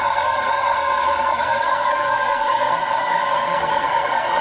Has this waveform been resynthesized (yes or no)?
yes